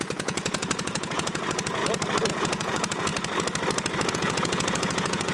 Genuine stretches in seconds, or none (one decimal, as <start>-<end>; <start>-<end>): 1.8-2.3; 3.1-4.1